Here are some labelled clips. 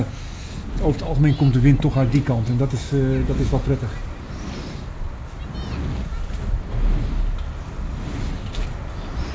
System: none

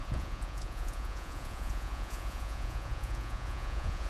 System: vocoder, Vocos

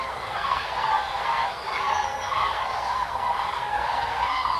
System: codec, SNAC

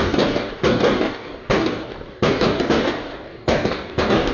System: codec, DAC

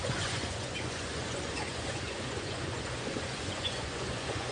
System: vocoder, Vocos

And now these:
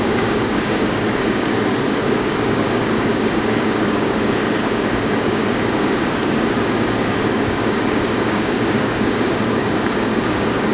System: codec, DAC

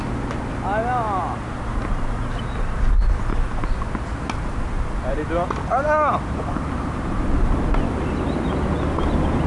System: none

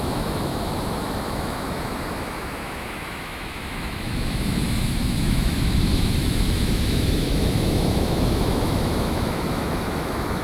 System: autoencoder, DAC-VAE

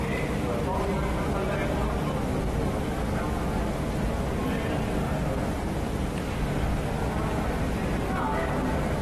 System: none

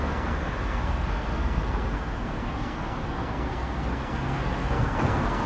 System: codec, SNAC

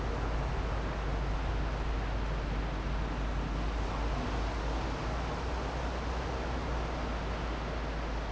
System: none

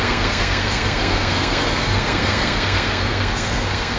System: codec, SNAC